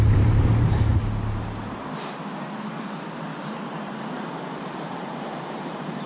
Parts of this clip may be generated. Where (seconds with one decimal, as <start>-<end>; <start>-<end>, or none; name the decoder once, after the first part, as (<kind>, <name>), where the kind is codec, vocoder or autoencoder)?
0.0-0.9 (vocoder, BigVGAN v2); 4.6-6.1